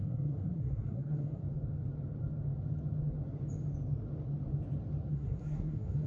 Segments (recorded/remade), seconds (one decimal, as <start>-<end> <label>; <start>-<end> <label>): 0.0-1.4 remade; 1.4-5.1 recorded; 5.1-6.1 remade